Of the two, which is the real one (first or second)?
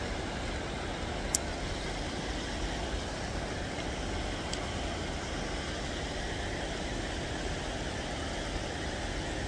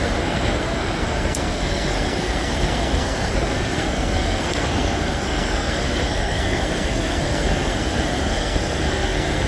first